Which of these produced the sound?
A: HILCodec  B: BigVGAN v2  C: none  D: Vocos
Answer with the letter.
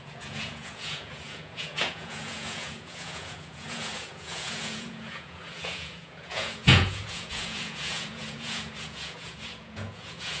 D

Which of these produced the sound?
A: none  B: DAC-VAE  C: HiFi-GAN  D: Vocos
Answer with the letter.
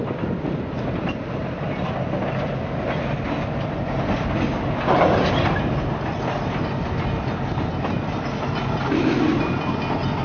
A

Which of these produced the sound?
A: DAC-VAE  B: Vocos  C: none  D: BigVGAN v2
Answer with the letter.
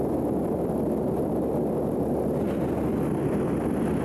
C